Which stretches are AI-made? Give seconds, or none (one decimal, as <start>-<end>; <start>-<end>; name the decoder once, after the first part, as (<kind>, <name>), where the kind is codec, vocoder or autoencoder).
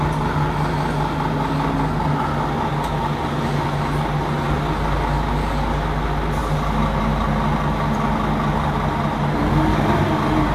none